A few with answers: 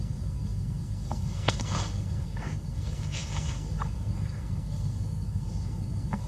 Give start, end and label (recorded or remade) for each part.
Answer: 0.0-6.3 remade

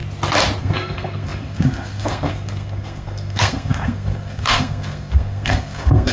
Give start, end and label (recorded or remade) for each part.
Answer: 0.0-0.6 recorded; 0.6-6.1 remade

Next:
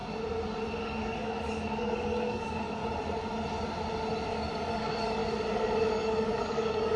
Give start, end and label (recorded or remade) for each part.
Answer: 0.0-0.8 recorded; 0.8-2.8 remade; 2.8-4.3 recorded; 4.3-5.2 remade; 5.2-5.9 recorded; 5.9-7.0 remade

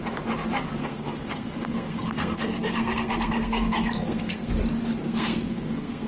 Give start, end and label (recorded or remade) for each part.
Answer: 0.0-0.8 recorded; 0.8-4.5 remade; 4.5-4.9 recorded; 4.9-6.1 remade

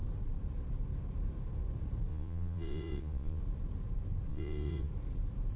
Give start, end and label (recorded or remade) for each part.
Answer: 0.0-2.1 recorded; 2.1-3.4 remade; 3.4-4.3 recorded; 4.3-4.9 remade; 4.9-5.6 recorded